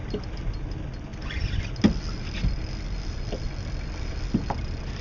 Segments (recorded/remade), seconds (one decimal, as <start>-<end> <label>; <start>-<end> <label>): 0.0-5.0 recorded